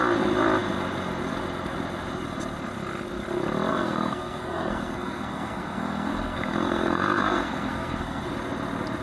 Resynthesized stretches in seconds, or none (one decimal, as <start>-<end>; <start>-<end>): 3.7-8.2